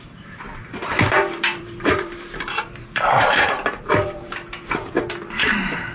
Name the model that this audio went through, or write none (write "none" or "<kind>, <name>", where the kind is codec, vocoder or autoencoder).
vocoder, BigVGAN v2